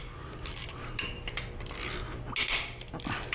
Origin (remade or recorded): recorded